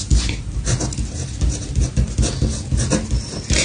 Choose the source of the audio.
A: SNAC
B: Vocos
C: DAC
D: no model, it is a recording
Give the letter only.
D